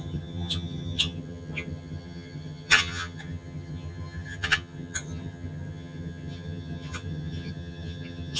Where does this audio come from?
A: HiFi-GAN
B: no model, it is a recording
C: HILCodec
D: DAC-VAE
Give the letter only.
A